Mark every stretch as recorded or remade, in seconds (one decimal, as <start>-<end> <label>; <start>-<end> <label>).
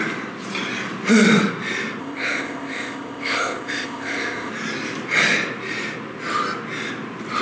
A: 0.0-2.0 recorded; 2.0-4.5 remade; 4.5-7.4 recorded